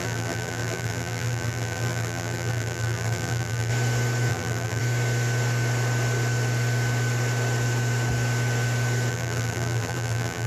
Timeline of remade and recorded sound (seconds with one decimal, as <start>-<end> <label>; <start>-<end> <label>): 0.0-3.7 remade; 3.7-4.3 recorded; 4.3-4.8 remade; 4.8-9.1 recorded; 9.1-10.5 remade